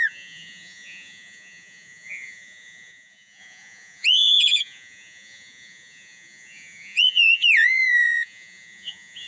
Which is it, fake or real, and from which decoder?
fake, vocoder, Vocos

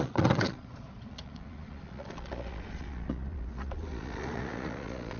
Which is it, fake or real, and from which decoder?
fake, vocoder, Vocos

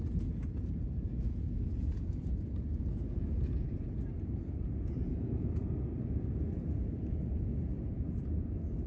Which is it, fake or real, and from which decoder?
fake, vocoder, Vocos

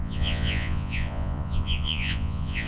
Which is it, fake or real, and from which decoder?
fake, vocoder, Vocos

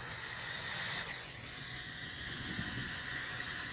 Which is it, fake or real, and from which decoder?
fake, vocoder, Vocos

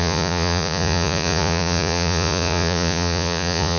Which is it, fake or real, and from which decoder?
fake, vocoder, Vocos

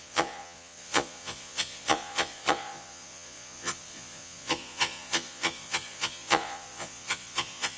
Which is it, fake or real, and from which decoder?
fake, vocoder, Vocos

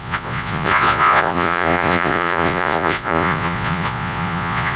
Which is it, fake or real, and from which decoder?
fake, vocoder, Vocos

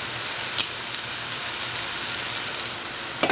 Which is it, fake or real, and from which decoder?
real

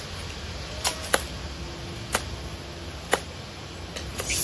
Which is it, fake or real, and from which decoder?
real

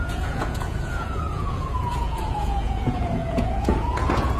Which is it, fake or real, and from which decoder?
fake, vocoder, Vocos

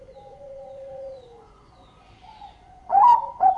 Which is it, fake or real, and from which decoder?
fake, vocoder, Vocos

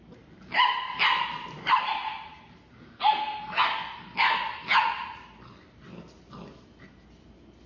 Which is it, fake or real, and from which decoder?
real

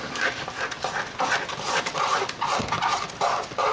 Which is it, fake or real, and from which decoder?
real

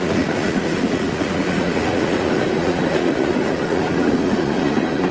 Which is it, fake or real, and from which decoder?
fake, vocoder, Vocos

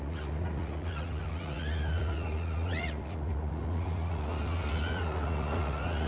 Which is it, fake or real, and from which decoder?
fake, vocoder, Vocos